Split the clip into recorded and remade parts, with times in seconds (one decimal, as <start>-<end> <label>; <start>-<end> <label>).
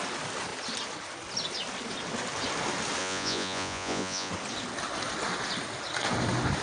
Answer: 0.0-3.0 recorded; 3.0-4.3 remade; 4.3-6.6 recorded